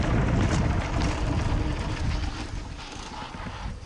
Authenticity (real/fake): real